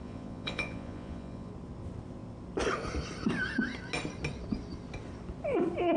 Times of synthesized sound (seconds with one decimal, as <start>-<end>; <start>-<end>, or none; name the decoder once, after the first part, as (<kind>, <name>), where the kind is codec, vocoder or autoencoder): 0.0-1.5 (vocoder, Vocos)